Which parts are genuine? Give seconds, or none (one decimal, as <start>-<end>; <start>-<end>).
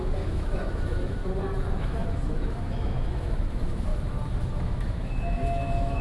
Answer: 1.2-1.8; 3.9-4.5